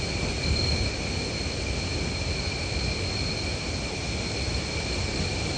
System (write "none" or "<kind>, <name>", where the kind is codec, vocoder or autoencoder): none